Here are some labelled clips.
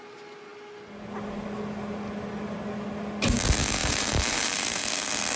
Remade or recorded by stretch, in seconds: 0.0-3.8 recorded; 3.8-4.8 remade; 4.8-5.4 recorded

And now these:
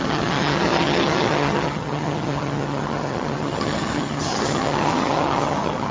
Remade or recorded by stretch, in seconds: 0.0-5.9 remade